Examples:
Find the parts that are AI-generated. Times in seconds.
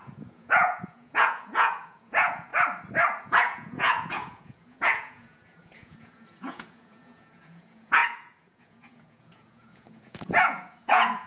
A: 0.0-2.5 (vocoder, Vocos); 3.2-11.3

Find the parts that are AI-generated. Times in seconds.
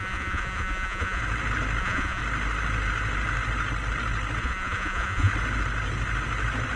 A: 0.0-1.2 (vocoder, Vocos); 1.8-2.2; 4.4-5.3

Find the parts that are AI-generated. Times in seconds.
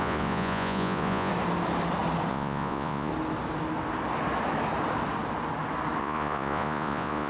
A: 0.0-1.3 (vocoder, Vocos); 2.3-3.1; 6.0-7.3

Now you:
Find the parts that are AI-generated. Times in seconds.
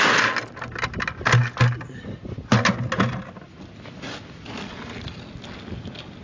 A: none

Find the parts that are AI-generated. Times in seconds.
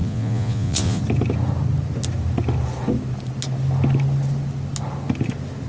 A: 0.0-1.0 (vocoder, Vocos)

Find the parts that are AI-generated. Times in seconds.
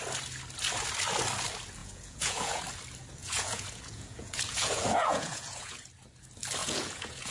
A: 1.8-2.6 (vocoder, Vocos); 3.2-5.9; 6.6-7.3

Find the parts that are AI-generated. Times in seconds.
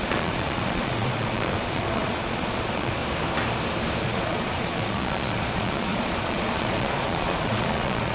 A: 0.0-3.0 (vocoder, Vocos); 4.0-8.1